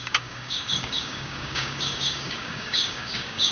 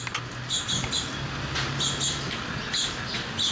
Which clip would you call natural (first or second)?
second